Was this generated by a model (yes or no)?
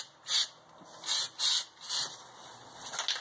no